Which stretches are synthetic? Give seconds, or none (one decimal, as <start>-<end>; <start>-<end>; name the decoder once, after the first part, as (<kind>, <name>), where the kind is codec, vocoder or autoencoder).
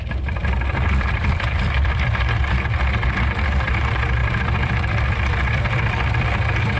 0.7-3.7 (vocoder, BigVGAN v2); 4.2-5.6